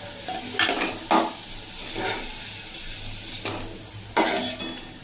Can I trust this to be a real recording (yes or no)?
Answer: yes